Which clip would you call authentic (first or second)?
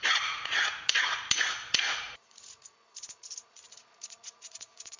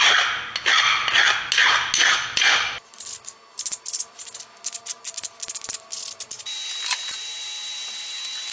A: second